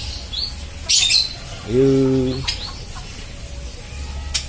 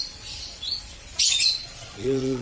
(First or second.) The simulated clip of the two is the second